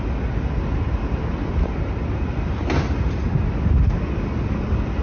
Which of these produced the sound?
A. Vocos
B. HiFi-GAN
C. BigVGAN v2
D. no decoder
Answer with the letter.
D